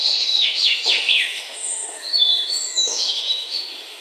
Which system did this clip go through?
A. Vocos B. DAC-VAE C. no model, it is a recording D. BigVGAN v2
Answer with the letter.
B